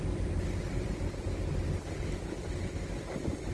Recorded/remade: recorded